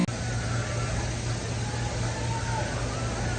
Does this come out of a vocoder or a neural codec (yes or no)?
no